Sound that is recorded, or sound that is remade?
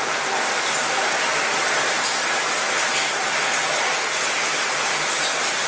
recorded